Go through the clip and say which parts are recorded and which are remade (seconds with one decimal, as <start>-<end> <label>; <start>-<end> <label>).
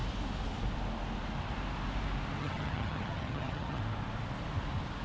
0.0-2.4 recorded; 2.4-3.8 remade; 3.8-5.0 recorded